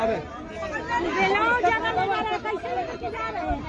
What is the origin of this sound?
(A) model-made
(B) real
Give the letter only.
B